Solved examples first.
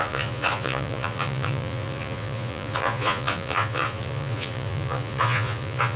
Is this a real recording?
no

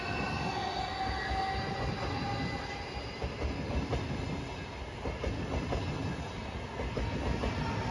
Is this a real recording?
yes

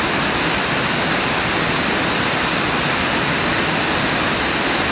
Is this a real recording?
yes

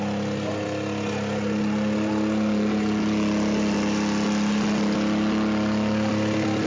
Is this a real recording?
yes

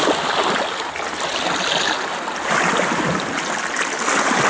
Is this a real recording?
yes